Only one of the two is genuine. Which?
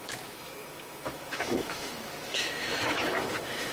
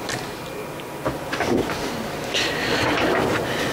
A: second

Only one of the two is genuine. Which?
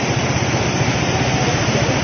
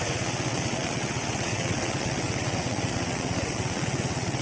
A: first